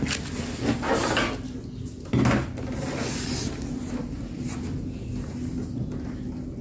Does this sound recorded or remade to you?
recorded